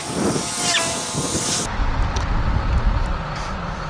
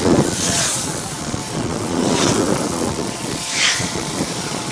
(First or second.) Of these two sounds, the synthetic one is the second